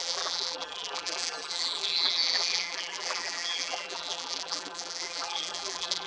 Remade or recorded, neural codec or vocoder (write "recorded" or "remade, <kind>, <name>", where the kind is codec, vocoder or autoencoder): remade, vocoder, BigVGAN v2